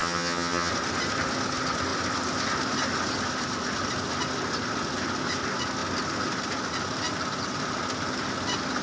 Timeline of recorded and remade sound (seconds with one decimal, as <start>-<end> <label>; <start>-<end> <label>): 0.0-0.7 remade; 0.7-8.8 recorded